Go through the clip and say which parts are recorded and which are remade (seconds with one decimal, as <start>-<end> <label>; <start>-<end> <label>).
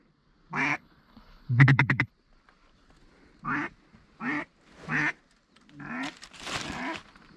0.0-0.7 recorded; 0.7-2.1 remade; 2.1-7.4 recorded